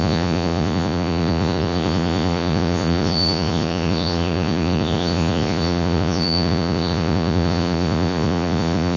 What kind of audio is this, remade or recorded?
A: remade